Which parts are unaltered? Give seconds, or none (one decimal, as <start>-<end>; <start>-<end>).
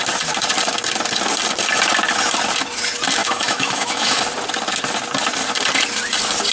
0.0-3.2; 4.2-6.5